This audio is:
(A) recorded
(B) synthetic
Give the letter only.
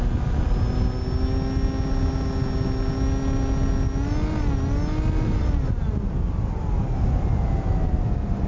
A